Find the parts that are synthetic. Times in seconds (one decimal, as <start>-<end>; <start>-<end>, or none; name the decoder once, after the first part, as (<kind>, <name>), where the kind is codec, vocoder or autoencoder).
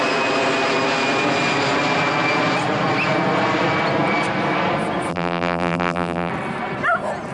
5.1-6.3 (vocoder, BigVGAN v2)